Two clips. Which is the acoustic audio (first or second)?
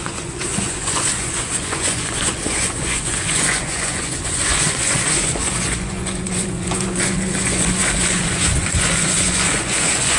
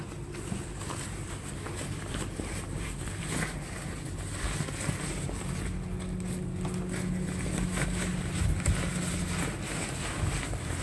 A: second